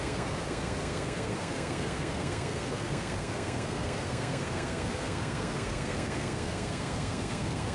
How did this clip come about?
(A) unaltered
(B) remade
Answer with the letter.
B